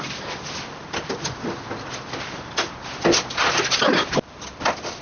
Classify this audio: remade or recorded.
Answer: recorded